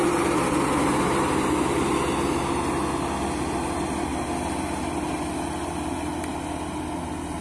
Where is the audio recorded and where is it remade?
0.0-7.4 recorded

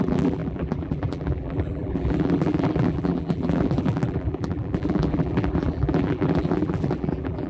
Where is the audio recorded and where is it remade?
0.0-7.5 remade